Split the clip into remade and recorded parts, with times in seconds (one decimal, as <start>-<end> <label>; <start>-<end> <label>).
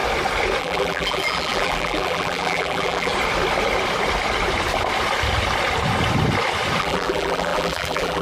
0.0-0.6 recorded; 0.6-3.1 remade; 3.1-6.8 recorded; 6.8-8.2 remade